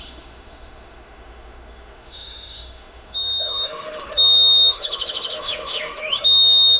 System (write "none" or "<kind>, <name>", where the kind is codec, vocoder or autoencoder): autoencoder, DAC-VAE